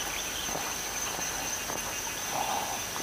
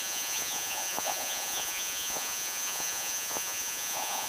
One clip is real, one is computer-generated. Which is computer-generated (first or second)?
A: second